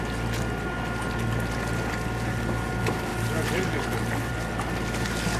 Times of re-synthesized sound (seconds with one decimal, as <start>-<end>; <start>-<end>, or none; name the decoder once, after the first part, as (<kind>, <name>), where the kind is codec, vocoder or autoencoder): none